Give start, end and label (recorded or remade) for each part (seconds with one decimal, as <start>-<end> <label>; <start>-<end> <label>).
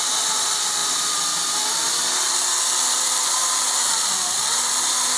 0.0-5.2 remade